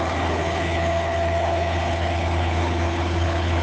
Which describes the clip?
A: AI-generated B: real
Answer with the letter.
A